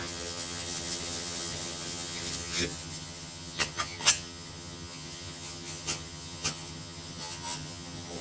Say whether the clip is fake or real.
fake